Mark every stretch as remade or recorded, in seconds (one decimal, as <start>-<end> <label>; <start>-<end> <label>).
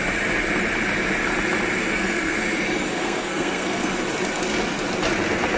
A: 0.0-1.9 recorded; 1.9-2.4 remade; 2.4-2.9 recorded; 2.9-3.9 remade; 3.9-5.6 recorded